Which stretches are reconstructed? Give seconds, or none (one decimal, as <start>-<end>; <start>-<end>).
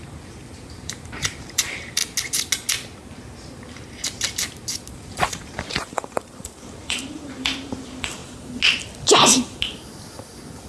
0.0-2.0; 4.9-8.2